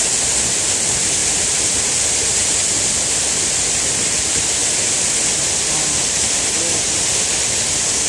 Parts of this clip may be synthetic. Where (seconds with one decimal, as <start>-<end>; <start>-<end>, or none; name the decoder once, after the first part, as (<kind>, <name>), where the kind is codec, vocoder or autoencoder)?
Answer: 1.2-1.8 (vocoder, BigVGAN v2)